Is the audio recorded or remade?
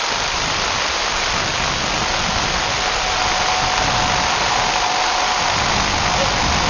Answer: recorded